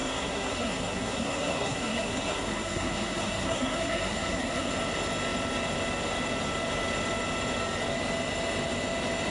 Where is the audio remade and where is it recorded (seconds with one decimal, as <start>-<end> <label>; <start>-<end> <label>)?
0.0-4.7 remade; 4.7-9.3 recorded